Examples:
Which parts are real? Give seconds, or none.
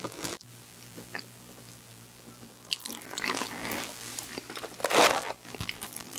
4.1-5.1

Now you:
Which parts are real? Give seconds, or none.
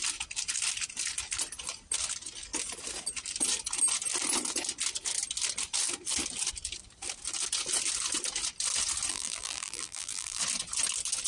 0.0-9.1; 10.4-11.3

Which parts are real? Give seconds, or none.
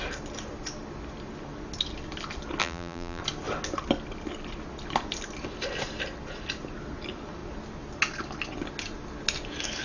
0.0-2.6; 3.2-9.8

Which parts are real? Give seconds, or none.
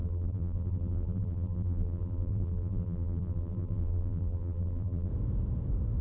5.1-6.0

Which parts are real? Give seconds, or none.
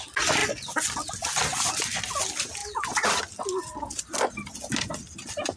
0.0-5.6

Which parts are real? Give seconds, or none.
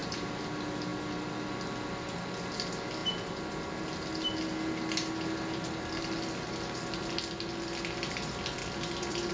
0.5-8.6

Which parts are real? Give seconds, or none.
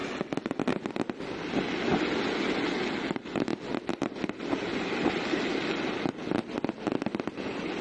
0.0-7.8